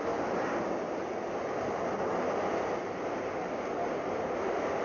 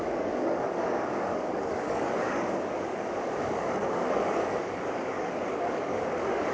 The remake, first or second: second